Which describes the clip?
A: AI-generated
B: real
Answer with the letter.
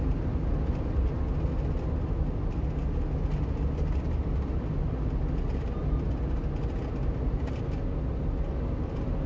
B